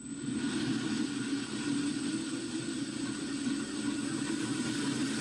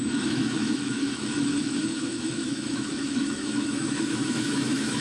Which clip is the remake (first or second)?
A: second